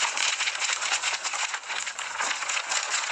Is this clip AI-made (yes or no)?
yes